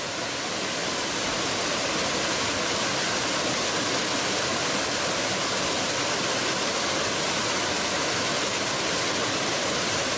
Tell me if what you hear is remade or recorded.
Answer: recorded